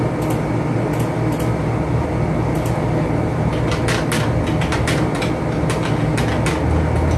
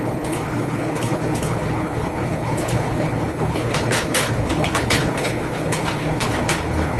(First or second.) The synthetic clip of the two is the second